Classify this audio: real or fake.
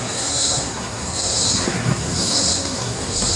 fake